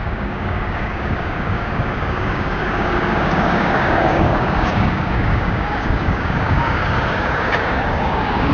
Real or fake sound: fake